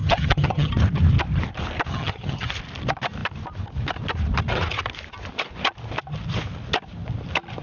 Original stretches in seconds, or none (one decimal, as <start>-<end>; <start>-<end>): 0.7-1.9; 2.5-7.6